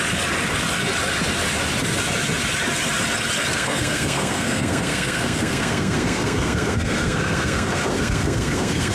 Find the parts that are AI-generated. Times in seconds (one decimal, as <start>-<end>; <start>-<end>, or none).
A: 3.5-8.9